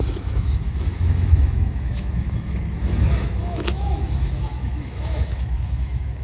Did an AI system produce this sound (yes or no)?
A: yes